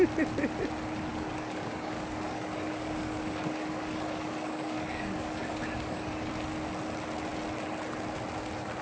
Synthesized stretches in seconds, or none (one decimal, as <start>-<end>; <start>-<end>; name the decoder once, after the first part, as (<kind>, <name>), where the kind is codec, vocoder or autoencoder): 1.1-6.3 (codec, DAC)